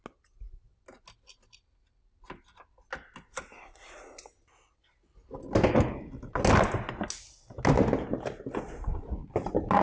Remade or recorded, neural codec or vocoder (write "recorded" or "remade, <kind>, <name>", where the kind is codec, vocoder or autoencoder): recorded